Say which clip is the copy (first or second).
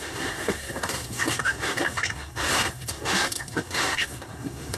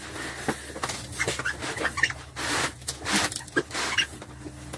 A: first